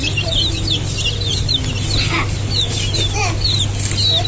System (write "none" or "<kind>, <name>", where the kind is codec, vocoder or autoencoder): none